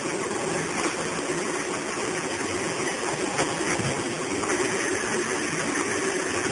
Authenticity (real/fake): real